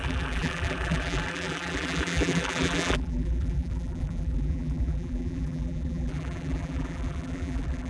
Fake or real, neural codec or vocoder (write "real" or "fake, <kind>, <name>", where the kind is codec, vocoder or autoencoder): fake, vocoder, BigVGAN v2